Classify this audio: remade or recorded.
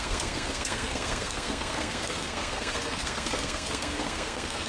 remade